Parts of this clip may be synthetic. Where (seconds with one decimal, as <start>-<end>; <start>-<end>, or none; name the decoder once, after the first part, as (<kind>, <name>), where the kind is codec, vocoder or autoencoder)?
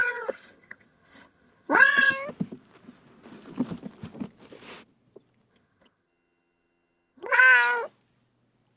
0.0-2.1 (vocoder, HiFi-GAN); 5.5-7.4